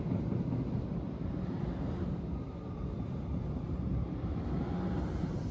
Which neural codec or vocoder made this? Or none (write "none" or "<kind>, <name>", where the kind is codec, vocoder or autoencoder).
none